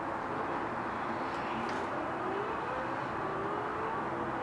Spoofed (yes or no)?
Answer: no